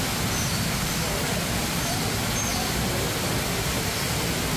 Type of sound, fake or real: real